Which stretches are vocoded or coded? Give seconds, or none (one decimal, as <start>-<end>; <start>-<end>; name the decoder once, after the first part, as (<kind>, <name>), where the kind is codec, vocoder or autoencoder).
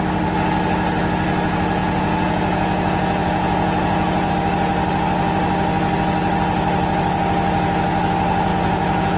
1.8-4.3 (vocoder, Vocos); 8.5-9.2